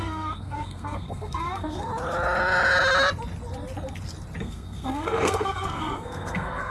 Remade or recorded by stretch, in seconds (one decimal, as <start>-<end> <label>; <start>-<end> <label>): 0.0-1.9 remade; 1.9-4.4 recorded; 4.4-6.7 remade